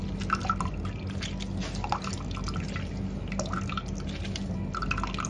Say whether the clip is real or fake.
real